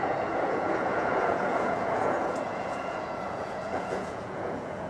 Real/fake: fake